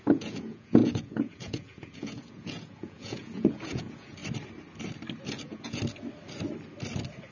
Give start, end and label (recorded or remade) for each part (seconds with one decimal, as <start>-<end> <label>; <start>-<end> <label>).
0.0-4.2 remade; 4.2-5.3 recorded; 5.3-5.8 remade; 5.8-7.3 recorded

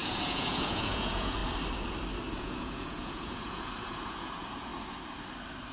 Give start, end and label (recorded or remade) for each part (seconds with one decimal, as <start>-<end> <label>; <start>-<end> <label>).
0.0-1.4 remade; 1.4-2.3 recorded; 2.3-4.7 remade; 4.7-5.7 recorded

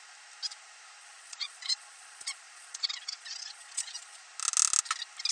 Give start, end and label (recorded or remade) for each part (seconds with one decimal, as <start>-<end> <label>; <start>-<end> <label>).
0.0-1.0 recorded; 1.0-4.2 remade; 4.2-5.3 recorded

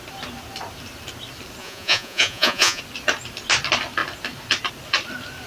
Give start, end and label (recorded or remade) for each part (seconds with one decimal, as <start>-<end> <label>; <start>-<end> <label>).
0.0-1.6 recorded; 1.6-2.8 remade; 2.8-5.5 recorded

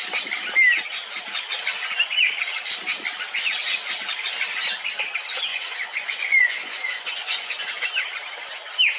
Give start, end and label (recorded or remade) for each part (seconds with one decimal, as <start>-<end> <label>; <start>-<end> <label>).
0.0-5.5 recorded; 5.5-7.8 remade; 7.8-9.0 recorded

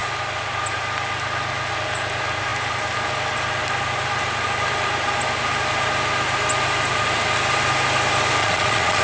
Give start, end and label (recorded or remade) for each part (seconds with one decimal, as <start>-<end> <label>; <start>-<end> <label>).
0.0-8.4 recorded; 8.4-9.0 remade

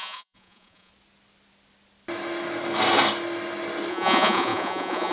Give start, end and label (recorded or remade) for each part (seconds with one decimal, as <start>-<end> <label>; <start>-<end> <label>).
0.0-0.9 remade; 0.9-3.9 recorded; 3.9-5.1 remade

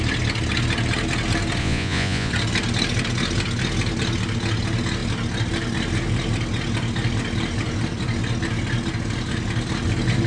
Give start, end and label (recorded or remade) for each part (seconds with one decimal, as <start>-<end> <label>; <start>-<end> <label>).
0.0-1.6 recorded; 1.6-2.3 remade; 2.3-10.3 recorded